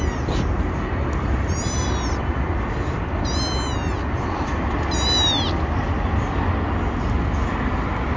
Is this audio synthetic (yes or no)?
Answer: no